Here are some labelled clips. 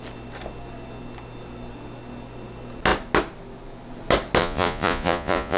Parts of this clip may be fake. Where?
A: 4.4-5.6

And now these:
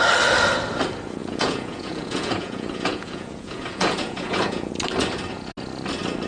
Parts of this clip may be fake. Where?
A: 1.2-4.7

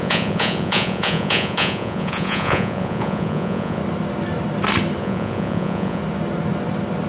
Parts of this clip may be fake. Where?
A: 0.0-3.8; 5.0-6.0

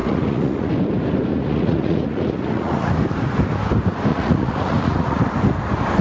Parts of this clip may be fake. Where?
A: 0.0-0.7; 1.3-2.9; 4.1-5.2

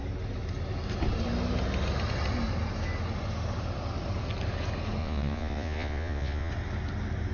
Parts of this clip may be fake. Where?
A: 5.0-6.5

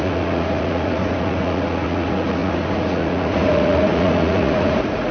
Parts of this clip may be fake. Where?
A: 0.0-5.1

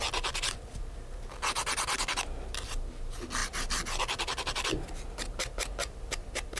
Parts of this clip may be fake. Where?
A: none

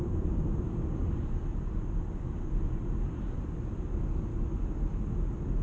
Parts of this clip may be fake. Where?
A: none